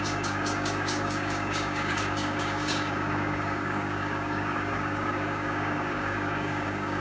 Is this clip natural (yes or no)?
no